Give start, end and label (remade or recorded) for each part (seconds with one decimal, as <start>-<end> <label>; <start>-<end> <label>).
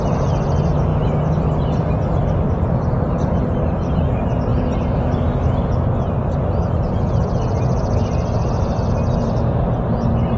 0.0-10.4 recorded